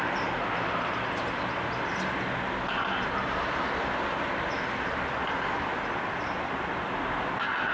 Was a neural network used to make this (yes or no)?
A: no